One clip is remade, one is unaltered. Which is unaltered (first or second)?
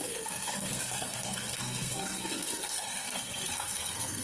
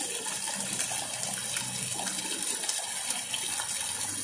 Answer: second